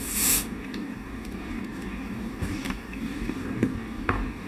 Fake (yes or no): yes